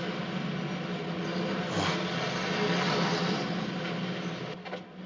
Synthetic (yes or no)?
no